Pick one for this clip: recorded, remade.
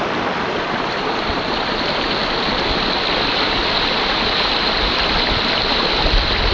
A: remade